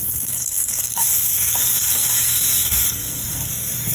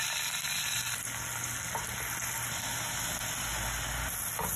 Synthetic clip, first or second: first